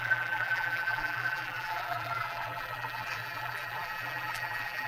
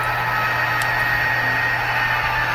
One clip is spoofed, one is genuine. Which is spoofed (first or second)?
first